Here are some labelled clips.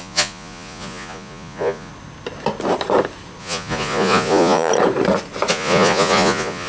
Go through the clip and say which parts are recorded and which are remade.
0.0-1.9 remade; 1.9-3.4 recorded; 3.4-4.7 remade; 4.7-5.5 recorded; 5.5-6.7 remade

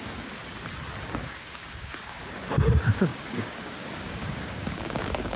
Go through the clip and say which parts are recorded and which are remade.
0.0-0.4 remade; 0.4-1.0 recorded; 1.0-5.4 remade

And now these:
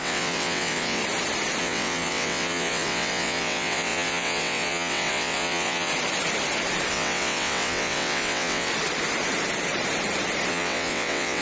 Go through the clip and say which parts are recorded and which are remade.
0.0-1.0 remade; 1.0-1.6 recorded; 1.6-5.9 remade; 5.9-6.9 recorded; 6.9-8.7 remade; 8.7-10.5 recorded; 10.5-11.4 remade